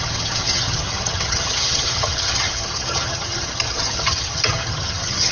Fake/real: fake